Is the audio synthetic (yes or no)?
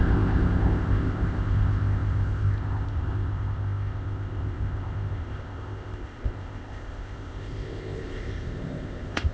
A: yes